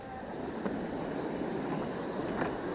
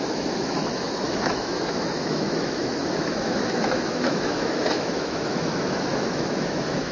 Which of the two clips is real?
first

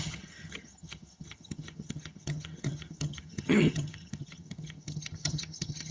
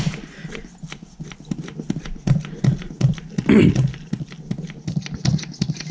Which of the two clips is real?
second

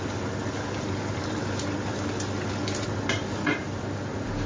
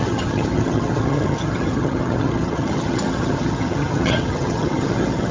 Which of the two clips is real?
first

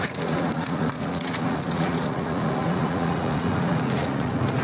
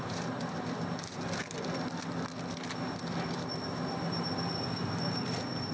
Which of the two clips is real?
second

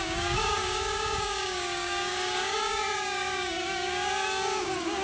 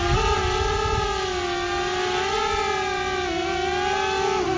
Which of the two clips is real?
second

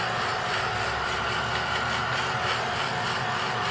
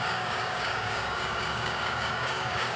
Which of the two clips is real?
first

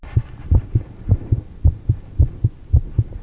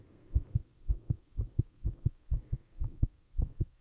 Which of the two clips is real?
first